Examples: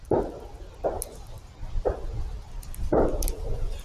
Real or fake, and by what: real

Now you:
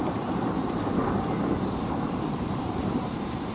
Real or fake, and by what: fake, vocoder, BigVGAN v2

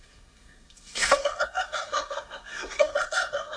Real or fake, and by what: fake, codec, SNAC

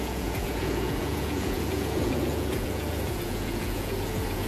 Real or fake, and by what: fake, vocoder, Vocos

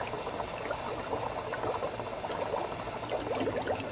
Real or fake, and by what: real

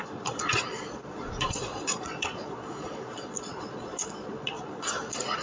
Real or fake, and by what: fake, vocoder, Vocos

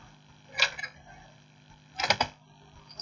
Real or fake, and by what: real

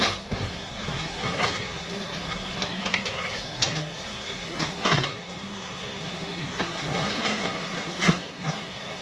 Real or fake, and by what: fake, codec, SNAC